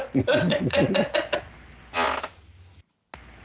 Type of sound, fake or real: real